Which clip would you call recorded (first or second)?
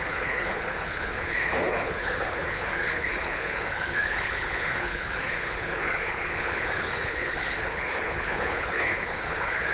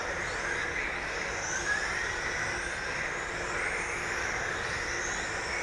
second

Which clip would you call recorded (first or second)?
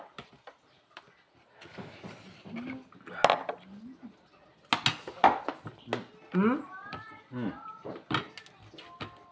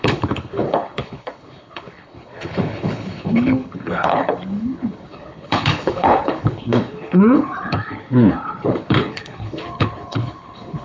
first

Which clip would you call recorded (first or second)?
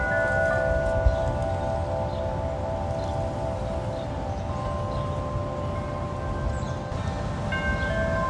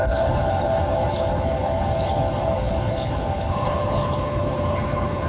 first